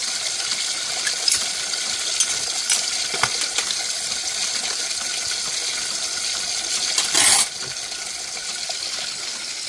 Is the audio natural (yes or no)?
yes